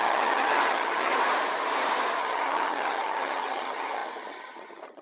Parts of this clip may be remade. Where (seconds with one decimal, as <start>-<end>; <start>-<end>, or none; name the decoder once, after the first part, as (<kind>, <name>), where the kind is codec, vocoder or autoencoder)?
0.0-1.1 (vocoder, HiFi-GAN); 2.2-5.0